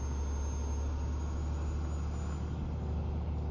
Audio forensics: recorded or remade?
recorded